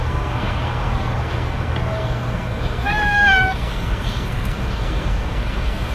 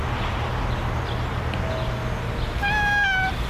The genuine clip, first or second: second